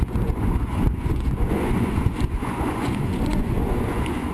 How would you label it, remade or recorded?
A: remade